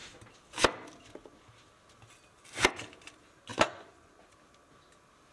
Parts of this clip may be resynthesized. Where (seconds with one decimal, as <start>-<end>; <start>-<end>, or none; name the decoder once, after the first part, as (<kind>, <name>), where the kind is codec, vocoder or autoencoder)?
3.5-4.3 (vocoder, Vocos)